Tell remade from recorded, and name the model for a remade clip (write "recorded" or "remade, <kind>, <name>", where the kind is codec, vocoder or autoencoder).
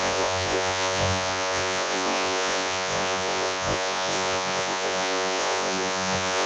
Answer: remade, vocoder, Vocos